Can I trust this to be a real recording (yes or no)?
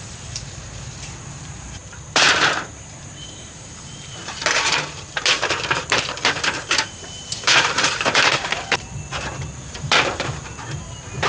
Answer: no